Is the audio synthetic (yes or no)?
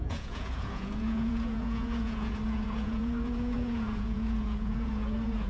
yes